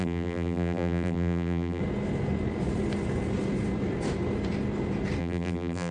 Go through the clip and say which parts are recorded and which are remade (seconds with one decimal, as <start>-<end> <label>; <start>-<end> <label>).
0.0-1.8 remade; 1.8-5.2 recorded; 5.2-5.9 remade